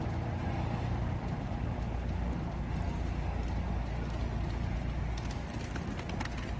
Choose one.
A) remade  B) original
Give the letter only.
B